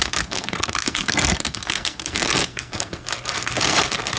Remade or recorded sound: remade